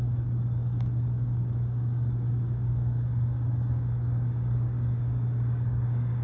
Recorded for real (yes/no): no